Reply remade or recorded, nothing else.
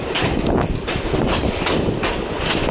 recorded